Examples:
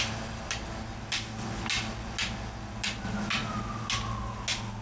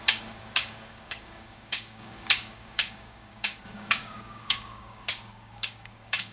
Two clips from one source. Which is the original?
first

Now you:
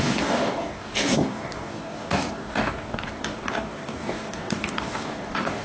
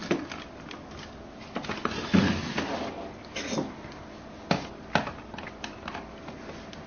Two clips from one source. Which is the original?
second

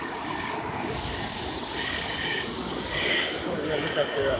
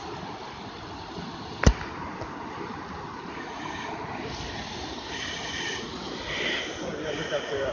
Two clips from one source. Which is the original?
second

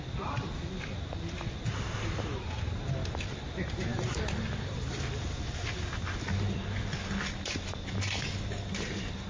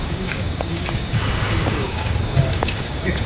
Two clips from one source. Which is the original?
first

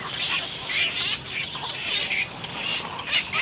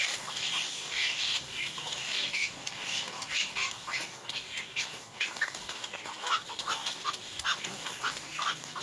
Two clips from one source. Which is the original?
first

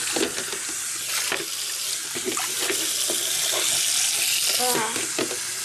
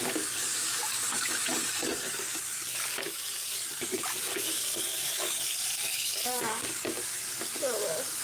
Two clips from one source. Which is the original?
first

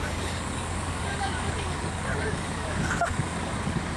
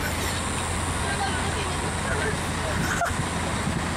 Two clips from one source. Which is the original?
second